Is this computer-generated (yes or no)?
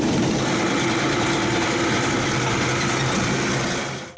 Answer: no